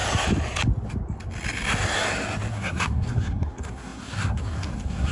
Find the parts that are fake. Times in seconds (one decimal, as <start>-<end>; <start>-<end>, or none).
2.5-5.1